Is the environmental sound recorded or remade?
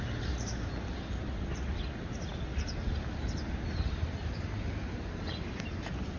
recorded